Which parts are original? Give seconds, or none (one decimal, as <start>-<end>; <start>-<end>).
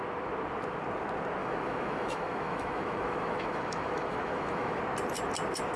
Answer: 0.0-1.4; 4.8-5.8